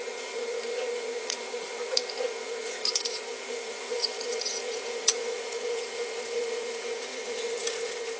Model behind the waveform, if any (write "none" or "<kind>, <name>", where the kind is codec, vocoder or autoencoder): vocoder, Vocos